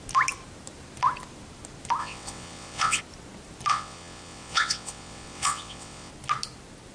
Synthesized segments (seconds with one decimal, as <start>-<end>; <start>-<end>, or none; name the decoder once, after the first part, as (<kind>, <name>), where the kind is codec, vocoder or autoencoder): 2.0-3.0 (vocoder, WaveNeXt); 3.7-6.1